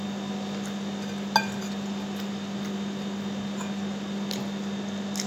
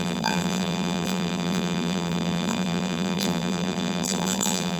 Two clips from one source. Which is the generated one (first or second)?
second